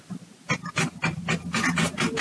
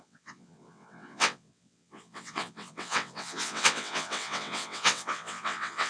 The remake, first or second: second